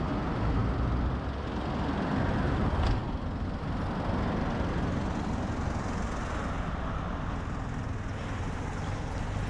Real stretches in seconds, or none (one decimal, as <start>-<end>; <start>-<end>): 0.0-9.5

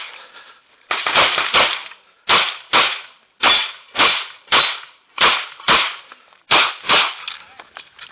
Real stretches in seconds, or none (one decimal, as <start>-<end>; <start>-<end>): 0.0-8.1

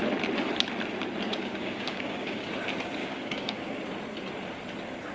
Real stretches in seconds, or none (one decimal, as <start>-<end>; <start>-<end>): 0.0-1.4; 2.5-3.0; 3.8-5.1

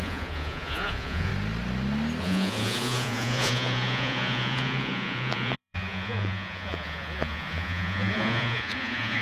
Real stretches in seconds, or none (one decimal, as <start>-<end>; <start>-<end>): 1.3-2.2

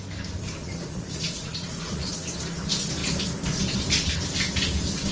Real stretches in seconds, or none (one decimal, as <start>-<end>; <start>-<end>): 0.0-0.6; 2.3-5.1